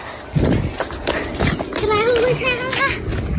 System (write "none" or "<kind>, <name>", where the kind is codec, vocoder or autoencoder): none